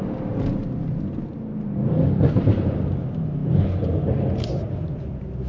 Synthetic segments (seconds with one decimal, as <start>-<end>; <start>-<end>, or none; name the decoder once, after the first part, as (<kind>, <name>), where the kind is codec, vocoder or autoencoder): none